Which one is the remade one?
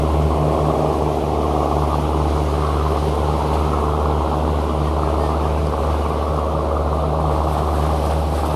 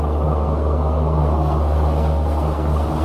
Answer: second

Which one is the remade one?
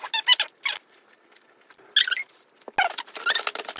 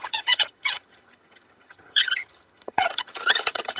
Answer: second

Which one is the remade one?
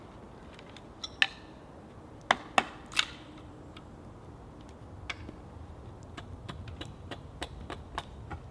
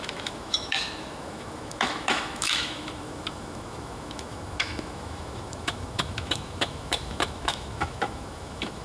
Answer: second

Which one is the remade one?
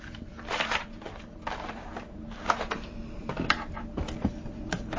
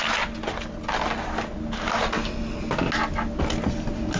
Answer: first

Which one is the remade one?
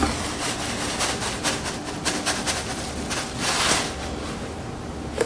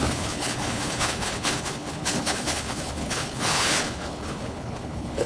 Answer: second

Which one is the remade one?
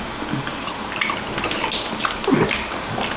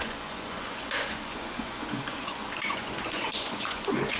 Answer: second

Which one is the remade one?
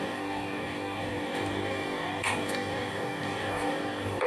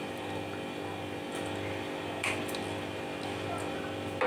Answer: first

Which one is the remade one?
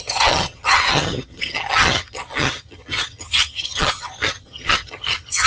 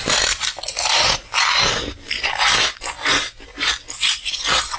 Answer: first